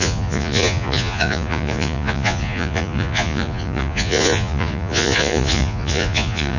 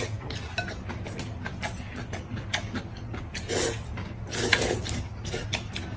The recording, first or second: second